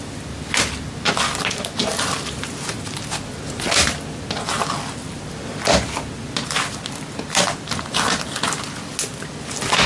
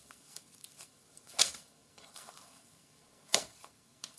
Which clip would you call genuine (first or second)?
first